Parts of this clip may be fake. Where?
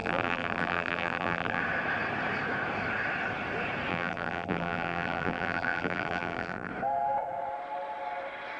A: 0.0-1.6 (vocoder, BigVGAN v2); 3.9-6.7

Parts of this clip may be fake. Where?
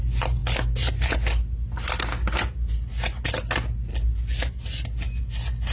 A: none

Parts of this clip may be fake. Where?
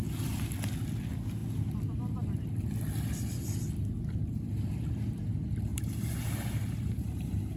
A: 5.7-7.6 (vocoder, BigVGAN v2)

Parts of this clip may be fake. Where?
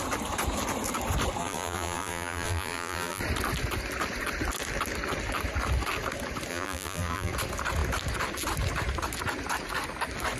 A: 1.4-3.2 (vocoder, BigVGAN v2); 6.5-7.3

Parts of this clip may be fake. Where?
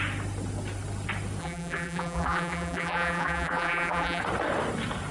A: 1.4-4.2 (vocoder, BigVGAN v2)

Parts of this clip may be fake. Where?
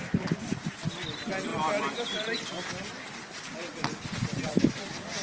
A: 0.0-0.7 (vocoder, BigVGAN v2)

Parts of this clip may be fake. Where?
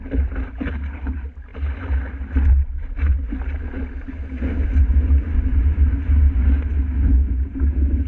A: 1.5-2.0 (vocoder, BigVGAN v2); 5.5-6.6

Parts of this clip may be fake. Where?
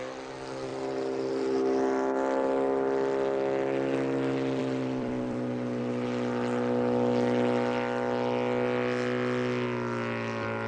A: 0.7-1.4 (vocoder, BigVGAN v2); 4.6-5.8